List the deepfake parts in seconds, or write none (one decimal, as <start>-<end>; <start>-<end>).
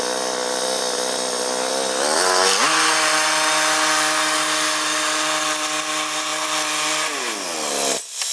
none